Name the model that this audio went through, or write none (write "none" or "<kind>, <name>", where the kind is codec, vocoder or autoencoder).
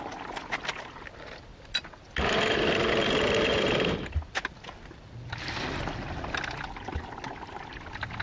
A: none